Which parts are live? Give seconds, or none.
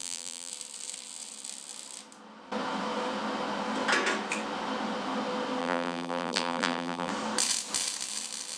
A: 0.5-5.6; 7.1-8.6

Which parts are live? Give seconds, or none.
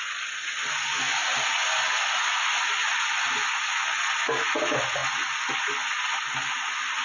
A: 0.0-7.0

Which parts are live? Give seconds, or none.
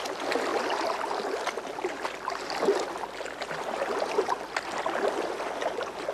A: 0.0-6.1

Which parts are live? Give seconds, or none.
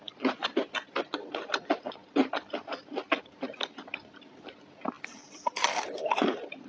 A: 0.0-5.2; 6.3-6.7